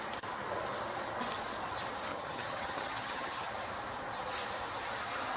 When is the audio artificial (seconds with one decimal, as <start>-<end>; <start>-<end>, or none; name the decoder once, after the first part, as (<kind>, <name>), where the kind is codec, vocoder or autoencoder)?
2.1-3.5 (vocoder, HiFi-GAN)